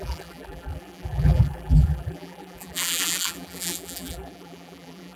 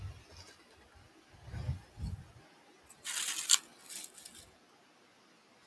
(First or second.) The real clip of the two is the second